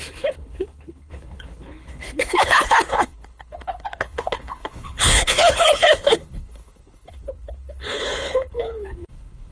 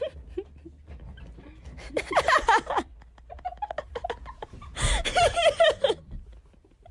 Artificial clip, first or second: first